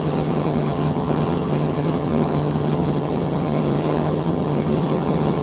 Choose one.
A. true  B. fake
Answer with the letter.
B